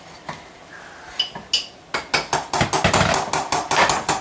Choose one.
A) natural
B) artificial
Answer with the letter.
A